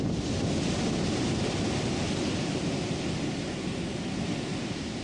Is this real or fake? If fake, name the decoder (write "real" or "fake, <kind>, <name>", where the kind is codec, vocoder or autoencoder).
real